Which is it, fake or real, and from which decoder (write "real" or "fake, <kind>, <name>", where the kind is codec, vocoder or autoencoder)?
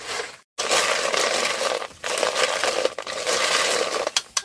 real